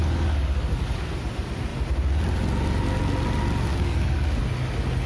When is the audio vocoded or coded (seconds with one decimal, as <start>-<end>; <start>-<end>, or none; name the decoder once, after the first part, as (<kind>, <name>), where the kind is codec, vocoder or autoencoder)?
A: 0.0-0.8 (codec, DAC); 3.7-4.4